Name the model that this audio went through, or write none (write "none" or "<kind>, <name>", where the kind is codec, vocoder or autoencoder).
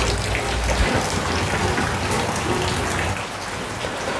none